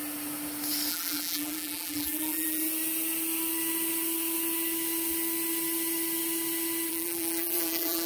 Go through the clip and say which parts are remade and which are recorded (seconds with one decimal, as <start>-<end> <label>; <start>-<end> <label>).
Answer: 0.0-0.9 recorded; 0.9-2.6 remade; 2.6-6.9 recorded; 6.9-8.1 remade